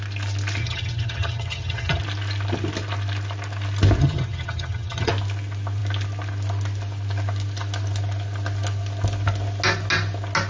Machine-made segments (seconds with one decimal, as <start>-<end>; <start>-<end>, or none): 0.6-2.0; 4.0-5.1